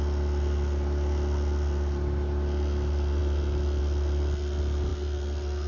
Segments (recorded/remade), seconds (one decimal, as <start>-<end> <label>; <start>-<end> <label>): 0.0-5.7 recorded